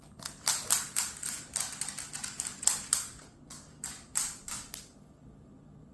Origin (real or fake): real